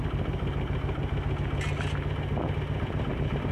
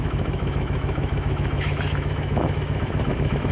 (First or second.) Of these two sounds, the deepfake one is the second